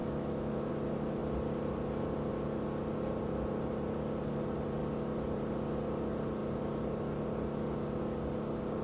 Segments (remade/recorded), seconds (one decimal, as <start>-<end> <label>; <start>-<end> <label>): 0.0-0.7 remade; 0.7-8.8 recorded